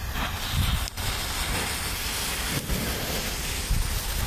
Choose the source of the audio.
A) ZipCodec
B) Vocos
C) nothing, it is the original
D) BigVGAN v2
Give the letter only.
C